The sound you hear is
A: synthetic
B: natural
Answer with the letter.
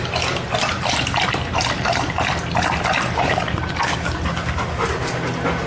B